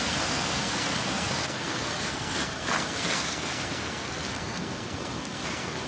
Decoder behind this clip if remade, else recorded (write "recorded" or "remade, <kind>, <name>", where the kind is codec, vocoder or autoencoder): remade, codec, SNAC